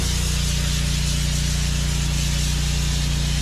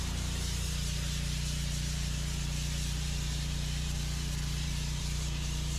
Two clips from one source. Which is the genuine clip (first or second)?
first